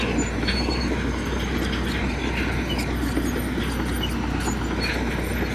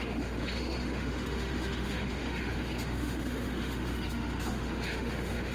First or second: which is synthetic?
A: second